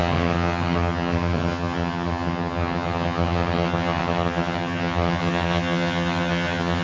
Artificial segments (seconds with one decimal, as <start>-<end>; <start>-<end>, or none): 0.0-6.8